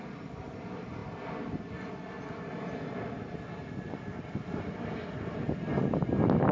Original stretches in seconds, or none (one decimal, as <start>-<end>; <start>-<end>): 0.0-6.5